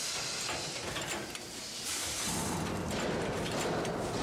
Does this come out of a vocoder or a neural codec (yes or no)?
no